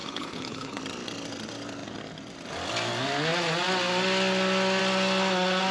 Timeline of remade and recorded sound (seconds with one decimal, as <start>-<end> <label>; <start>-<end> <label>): 0.0-0.8 remade; 0.8-5.7 recorded